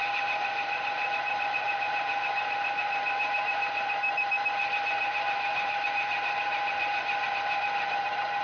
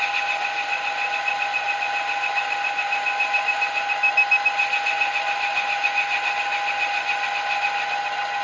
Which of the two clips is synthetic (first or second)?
first